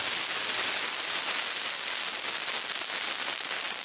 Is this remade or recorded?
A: recorded